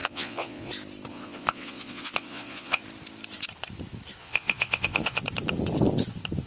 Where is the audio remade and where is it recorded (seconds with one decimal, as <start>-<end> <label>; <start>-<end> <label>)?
0.0-0.7 remade; 0.7-1.1 recorded; 1.1-2.8 remade; 2.8-4.2 recorded; 4.2-5.2 remade; 5.2-6.5 recorded